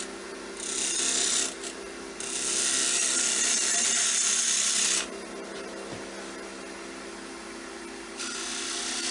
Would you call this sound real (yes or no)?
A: yes